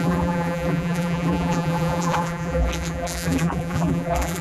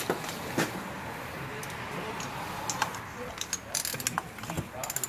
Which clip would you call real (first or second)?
second